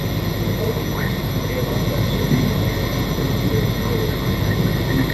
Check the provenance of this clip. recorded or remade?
recorded